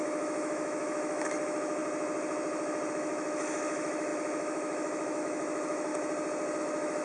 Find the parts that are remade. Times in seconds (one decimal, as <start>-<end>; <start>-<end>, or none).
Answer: 0.0-1.8; 2.9-5.9; 6.6-7.0